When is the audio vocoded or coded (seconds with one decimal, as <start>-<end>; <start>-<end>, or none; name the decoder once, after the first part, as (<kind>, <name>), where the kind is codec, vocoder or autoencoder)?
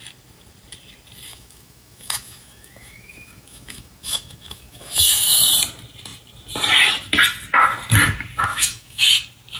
1.3-5.5 (autoencoder, DAC-VAE); 8.5-9.1